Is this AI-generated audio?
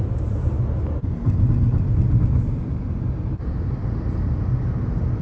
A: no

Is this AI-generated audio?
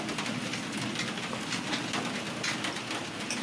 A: no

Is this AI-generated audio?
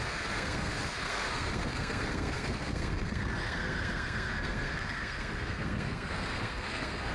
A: yes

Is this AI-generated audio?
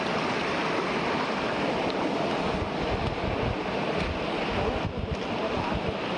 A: no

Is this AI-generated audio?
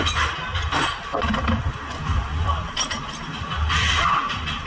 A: yes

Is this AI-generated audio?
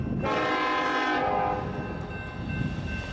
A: no